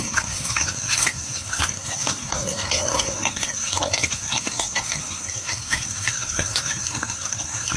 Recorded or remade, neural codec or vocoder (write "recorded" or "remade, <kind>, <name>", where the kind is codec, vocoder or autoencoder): remade, codec, SNAC